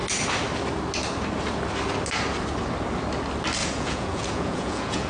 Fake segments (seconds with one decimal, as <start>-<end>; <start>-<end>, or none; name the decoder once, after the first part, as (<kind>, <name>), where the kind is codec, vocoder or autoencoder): 3.6-5.1 (vocoder, Vocos)